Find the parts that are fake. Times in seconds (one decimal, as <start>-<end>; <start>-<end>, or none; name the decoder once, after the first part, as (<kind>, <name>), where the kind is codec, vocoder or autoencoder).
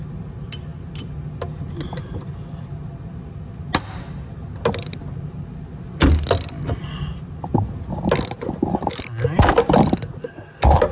none